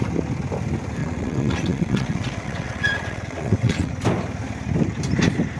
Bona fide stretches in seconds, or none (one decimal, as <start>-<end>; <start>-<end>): 0.0-1.0; 3.9-5.6